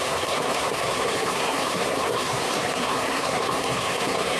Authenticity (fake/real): fake